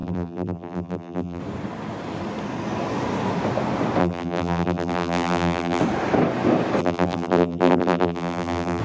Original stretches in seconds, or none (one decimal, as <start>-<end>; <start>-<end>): 1.4-4.0; 5.8-6.8